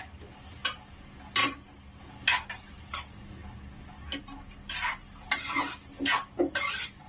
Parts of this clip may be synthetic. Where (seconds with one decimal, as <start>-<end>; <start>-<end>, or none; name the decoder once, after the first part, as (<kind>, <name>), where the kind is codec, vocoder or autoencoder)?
none